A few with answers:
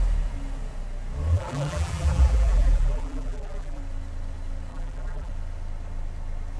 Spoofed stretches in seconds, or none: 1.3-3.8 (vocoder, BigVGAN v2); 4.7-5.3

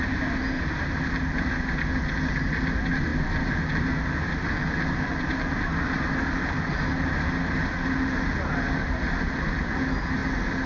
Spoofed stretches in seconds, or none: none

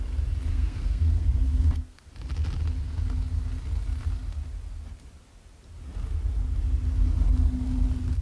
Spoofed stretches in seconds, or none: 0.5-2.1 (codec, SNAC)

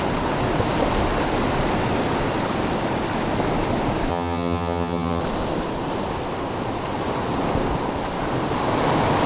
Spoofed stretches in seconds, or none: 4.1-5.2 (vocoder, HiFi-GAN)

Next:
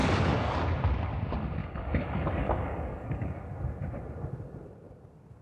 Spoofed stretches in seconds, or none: 0.0-0.6 (codec, DAC); 1.6-3.4

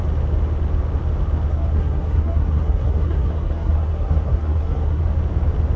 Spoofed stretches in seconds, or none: 1.5-5.0 (codec, SNAC)